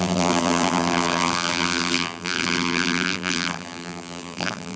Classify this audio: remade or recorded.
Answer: remade